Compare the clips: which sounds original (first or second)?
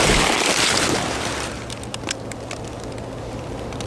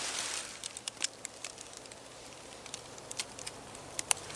first